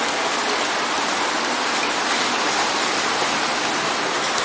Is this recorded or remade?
recorded